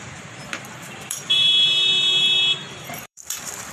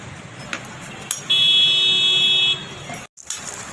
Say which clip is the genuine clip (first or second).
second